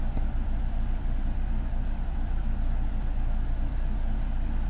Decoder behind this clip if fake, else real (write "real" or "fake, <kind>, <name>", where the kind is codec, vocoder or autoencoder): fake, vocoder, BigVGAN v2